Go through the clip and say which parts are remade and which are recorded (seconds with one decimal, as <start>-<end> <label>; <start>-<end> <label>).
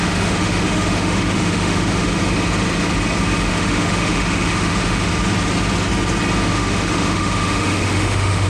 0.0-2.2 remade; 2.2-3.5 recorded; 3.5-5.1 remade; 5.1-6.5 recorded; 6.5-8.5 remade